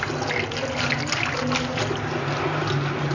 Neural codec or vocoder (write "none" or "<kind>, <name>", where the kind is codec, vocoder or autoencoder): none